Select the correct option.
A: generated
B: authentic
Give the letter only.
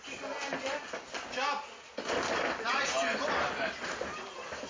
B